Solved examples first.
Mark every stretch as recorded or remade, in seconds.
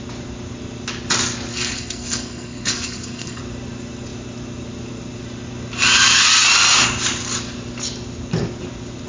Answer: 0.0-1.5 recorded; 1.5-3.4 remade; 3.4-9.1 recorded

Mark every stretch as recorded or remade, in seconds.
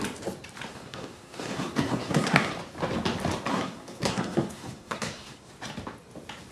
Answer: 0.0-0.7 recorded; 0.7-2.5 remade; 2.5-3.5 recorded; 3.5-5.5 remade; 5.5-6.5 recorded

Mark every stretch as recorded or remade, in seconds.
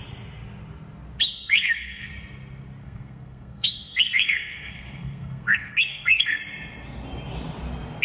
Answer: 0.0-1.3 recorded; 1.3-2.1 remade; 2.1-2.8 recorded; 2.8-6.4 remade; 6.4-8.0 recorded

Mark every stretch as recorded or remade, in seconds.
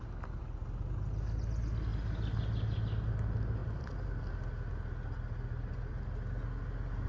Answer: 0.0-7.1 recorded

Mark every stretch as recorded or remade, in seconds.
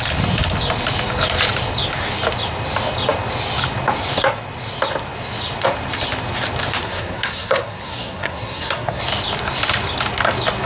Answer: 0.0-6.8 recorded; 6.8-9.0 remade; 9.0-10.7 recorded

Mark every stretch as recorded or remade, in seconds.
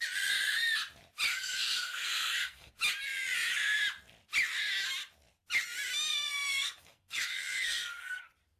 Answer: 0.0-1.3 recorded; 1.3-2.7 remade; 2.7-6.1 recorded; 6.1-8.2 remade; 8.2-8.6 recorded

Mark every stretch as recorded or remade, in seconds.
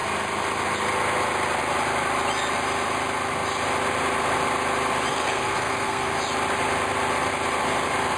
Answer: 0.0-5.1 recorded; 5.1-6.1 remade; 6.1-8.2 recorded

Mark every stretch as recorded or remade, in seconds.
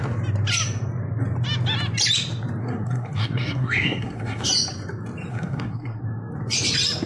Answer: 0.0-2.6 recorded; 2.6-4.5 remade; 4.5-5.3 recorded; 5.3-6.0 remade; 6.0-7.1 recorded